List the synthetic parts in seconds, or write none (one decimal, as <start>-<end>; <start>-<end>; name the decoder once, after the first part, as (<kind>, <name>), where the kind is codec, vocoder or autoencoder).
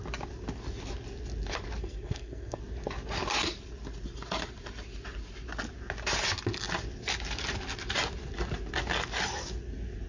1.8-2.6 (codec, SNAC)